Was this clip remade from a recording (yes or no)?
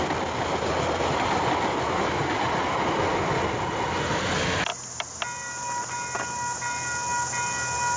no